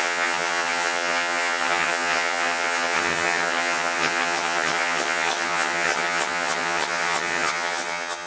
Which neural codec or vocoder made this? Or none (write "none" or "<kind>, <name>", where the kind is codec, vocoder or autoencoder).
vocoder, HiFi-GAN